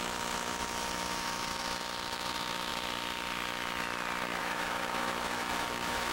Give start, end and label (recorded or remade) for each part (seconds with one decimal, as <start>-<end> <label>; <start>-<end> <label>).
0.0-2.7 remade; 2.7-4.4 recorded; 4.4-6.1 remade